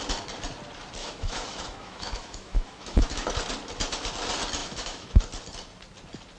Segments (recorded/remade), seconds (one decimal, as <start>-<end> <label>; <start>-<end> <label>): 0.0-1.0 recorded; 1.0-3.3 remade; 3.3-4.6 recorded; 4.6-5.2 remade; 5.2-6.4 recorded